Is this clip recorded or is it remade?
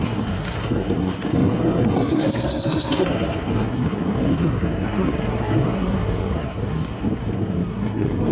remade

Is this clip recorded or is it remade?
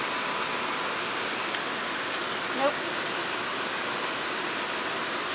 recorded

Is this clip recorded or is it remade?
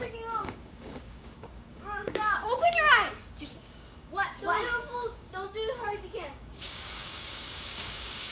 remade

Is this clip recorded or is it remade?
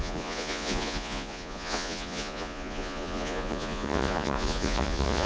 remade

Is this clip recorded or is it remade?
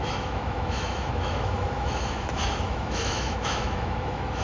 remade